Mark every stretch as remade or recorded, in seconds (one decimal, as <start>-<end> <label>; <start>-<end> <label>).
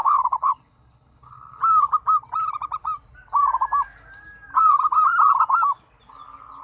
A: 0.0-1.6 remade; 1.6-6.6 recorded